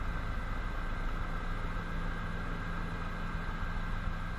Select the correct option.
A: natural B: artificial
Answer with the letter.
A